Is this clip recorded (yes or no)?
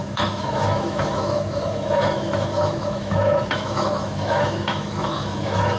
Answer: no